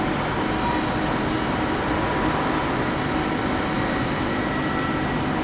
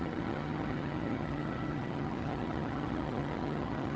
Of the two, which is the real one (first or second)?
first